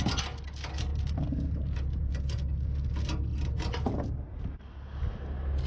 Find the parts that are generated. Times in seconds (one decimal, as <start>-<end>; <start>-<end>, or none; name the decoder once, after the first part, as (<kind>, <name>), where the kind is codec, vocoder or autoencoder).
0.9-2.2 (vocoder, BigVGAN v2); 3.3-4.7